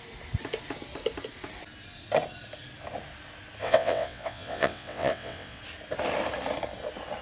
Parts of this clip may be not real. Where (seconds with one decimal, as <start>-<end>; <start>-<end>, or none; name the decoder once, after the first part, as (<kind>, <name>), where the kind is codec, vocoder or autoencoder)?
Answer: 3.6-5.6 (vocoder, WaveNeXt)